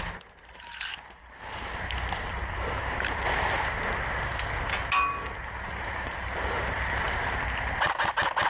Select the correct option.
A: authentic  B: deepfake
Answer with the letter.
A